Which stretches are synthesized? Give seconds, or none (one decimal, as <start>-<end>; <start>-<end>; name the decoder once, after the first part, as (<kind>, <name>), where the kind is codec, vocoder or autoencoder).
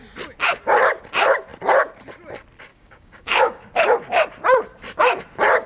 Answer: 2.7-3.7 (codec, DAC)